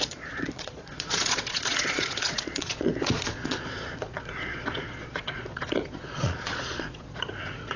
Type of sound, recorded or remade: remade